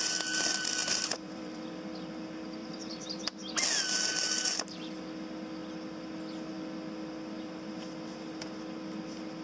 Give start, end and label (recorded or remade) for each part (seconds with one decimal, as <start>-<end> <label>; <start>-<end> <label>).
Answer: 0.0-0.8 recorded; 0.8-1.7 remade; 1.7-2.6 recorded; 2.6-3.2 remade; 3.2-9.4 recorded